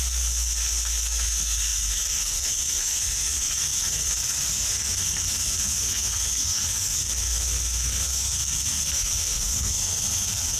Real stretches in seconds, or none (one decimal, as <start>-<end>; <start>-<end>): none